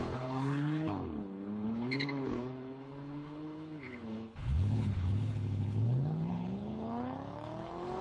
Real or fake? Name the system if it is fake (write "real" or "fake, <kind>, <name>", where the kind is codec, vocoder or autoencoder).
fake, codec, HILCodec